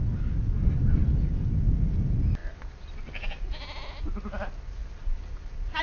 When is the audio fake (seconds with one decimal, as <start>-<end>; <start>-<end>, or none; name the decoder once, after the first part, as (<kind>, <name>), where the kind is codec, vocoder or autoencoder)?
none